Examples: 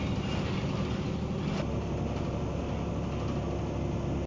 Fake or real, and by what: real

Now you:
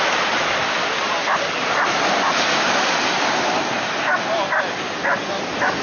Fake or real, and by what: real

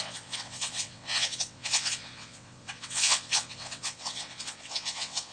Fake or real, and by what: fake, vocoder, WaveNeXt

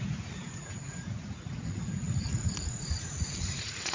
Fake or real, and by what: fake, vocoder, Vocos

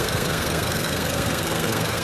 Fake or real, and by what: fake, codec, SNAC